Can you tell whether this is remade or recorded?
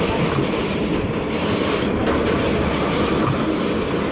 recorded